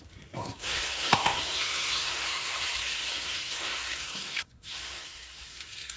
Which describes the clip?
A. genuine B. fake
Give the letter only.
B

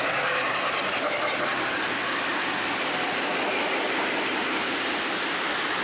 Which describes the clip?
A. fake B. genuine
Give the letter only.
B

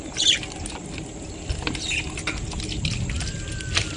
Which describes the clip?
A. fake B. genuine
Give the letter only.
B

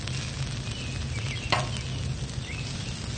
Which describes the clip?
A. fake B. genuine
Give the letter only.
B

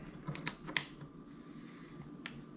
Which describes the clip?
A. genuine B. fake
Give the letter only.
A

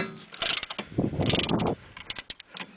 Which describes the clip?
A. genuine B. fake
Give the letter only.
A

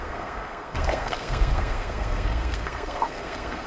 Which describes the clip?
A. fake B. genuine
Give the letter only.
A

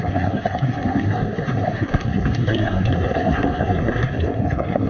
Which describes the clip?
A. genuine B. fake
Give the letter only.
B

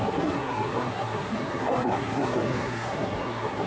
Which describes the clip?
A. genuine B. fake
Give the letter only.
B